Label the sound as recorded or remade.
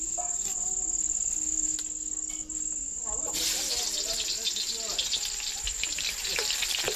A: recorded